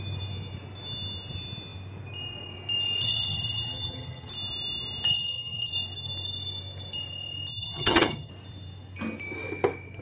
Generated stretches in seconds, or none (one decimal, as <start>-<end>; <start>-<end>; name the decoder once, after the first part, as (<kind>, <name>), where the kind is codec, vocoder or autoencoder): 3.0-4.3 (vocoder, HiFi-GAN); 5.1-5.7; 7.5-8.3